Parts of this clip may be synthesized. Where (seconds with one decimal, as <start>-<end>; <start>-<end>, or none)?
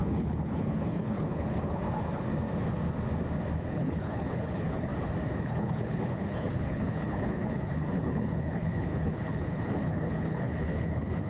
0.0-1.8; 3.7-4.9; 5.4-11.3